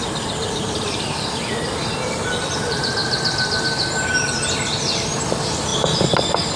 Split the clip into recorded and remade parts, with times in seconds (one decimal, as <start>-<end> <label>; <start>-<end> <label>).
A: 0.0-3.0 remade; 3.0-4.8 recorded; 4.8-5.7 remade; 5.7-6.6 recorded